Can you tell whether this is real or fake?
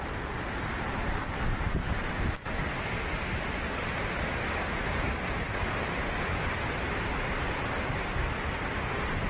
real